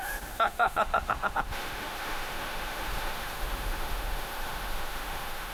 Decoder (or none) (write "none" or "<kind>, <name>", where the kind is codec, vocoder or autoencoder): autoencoder, DAC-VAE